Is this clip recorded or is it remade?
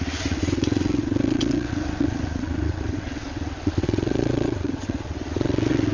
remade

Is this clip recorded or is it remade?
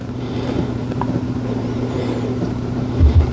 remade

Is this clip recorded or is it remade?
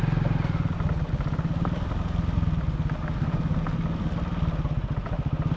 recorded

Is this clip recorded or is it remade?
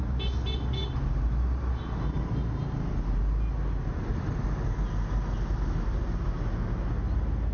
recorded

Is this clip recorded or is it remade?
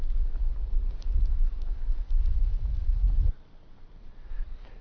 recorded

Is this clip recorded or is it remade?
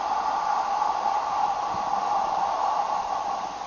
recorded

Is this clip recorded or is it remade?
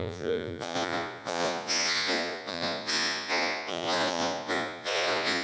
remade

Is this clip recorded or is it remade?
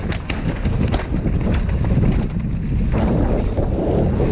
recorded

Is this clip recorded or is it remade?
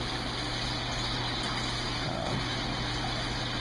recorded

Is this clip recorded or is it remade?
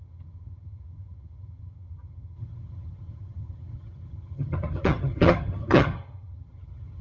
remade